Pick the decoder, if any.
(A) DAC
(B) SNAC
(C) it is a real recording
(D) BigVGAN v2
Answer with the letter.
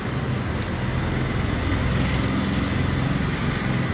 C